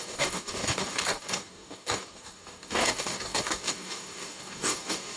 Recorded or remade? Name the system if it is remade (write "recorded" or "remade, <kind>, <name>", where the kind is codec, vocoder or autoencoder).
remade, codec, DAC